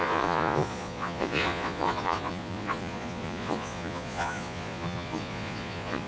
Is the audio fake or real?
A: fake